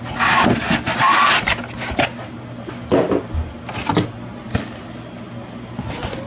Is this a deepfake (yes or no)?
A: no